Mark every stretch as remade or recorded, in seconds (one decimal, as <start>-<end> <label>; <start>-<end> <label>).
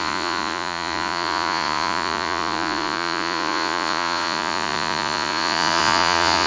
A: 0.0-6.5 remade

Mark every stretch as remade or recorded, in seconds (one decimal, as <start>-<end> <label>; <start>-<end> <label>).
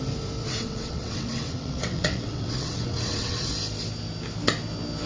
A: 0.0-0.4 recorded; 0.4-3.5 remade; 3.5-5.1 recorded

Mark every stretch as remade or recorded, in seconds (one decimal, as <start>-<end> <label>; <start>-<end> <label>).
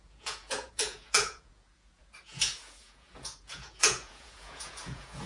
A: 0.0-5.3 remade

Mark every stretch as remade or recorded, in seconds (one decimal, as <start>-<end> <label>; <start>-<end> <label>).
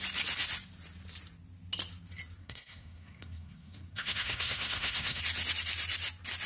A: 0.0-2.4 recorded; 2.4-5.2 remade; 5.2-6.5 recorded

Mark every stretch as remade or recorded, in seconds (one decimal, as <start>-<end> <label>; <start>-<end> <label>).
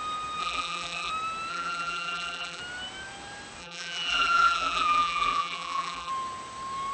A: 0.0-0.4 recorded; 0.4-1.1 remade; 1.1-1.5 recorded; 1.5-2.6 remade; 2.6-3.6 recorded; 3.6-6.1 remade; 6.1-6.9 recorded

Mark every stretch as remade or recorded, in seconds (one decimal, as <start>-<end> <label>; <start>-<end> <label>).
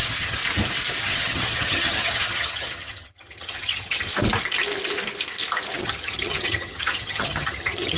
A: 0.0-0.4 remade; 0.4-1.0 recorded; 1.0-4.1 remade; 4.1-5.8 recorded; 5.8-8.0 remade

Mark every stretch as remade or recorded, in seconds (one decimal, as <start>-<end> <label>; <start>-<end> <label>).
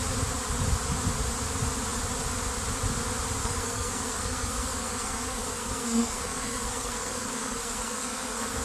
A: 0.0-3.4 recorded; 3.4-8.6 remade